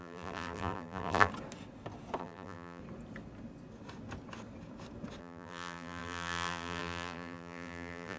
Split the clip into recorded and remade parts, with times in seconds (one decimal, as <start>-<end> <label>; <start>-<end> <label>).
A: 0.0-1.3 remade; 1.3-2.2 recorded; 2.2-2.8 remade; 2.8-5.2 recorded; 5.2-8.2 remade